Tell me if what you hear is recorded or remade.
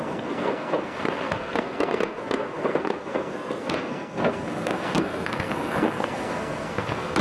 remade